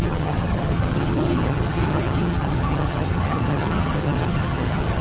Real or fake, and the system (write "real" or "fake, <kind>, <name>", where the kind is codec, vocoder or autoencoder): fake, vocoder, HiFi-GAN